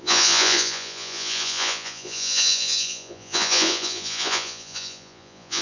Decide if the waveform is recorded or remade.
remade